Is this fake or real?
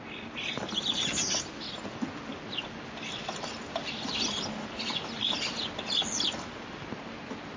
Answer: real